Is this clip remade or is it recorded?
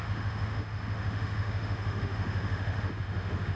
remade